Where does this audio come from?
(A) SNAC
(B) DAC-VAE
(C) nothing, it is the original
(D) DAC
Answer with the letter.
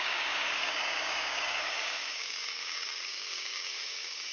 D